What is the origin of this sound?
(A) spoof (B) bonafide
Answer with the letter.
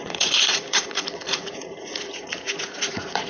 A